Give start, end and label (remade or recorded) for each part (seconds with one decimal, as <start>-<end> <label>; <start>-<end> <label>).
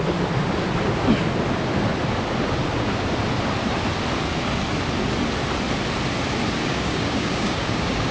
0.0-6.6 recorded; 6.6-8.1 remade